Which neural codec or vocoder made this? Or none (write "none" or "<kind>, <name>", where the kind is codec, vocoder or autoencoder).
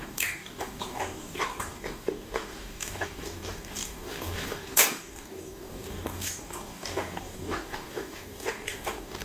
codec, DAC